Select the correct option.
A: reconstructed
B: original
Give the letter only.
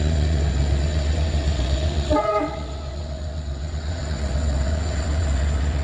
A